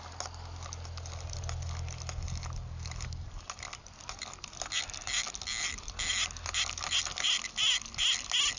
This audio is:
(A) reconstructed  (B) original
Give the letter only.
B